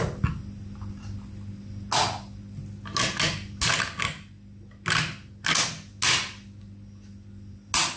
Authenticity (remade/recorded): recorded